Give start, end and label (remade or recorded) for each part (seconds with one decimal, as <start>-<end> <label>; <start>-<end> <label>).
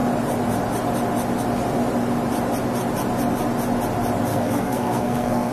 0.0-4.3 recorded; 4.3-5.5 remade